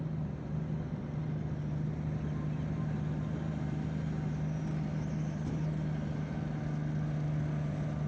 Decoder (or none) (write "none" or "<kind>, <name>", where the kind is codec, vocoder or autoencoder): none